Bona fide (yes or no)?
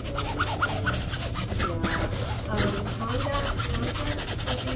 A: yes